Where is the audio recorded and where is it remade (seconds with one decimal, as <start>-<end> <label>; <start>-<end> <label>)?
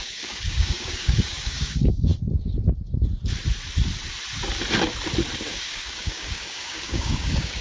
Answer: 0.0-2.1 remade; 2.1-5.5 recorded; 5.5-7.6 remade